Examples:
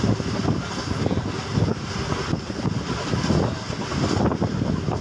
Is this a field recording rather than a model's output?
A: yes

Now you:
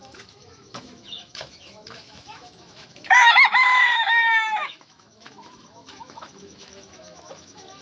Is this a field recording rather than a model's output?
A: no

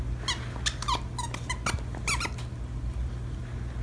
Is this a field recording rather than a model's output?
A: yes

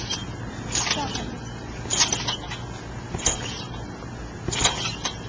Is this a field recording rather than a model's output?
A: yes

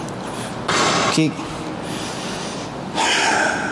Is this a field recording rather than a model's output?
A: yes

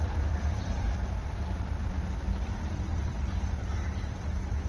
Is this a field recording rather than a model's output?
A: no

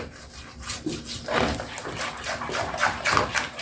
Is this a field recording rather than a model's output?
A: yes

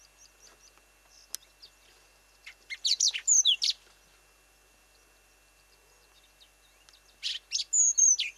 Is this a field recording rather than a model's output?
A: yes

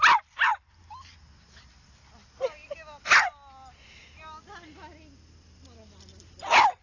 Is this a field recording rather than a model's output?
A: yes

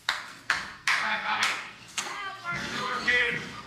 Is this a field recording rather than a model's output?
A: no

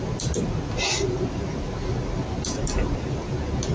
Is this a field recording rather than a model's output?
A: yes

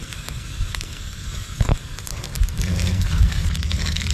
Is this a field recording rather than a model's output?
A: no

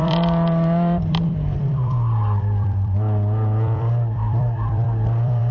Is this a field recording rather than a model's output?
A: no